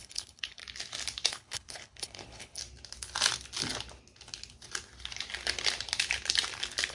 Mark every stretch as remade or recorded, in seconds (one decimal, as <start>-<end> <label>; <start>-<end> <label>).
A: 0.0-0.6 remade; 0.6-1.3 recorded; 1.3-2.6 remade; 2.6-6.9 recorded